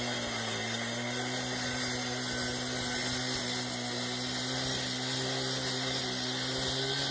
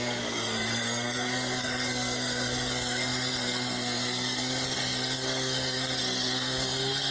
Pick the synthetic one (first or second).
second